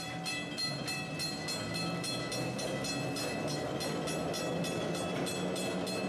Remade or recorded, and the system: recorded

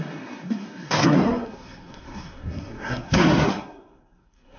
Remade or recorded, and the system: remade, codec, SNAC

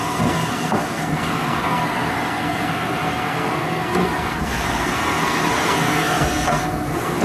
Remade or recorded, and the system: remade, codec, SNAC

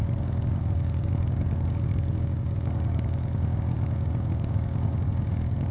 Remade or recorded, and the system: remade, codec, DAC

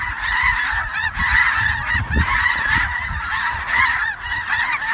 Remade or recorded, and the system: remade, vocoder, Vocos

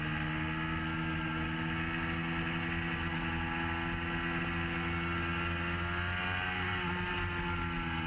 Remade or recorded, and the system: recorded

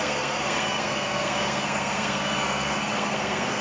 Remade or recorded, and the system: remade, codec, SNAC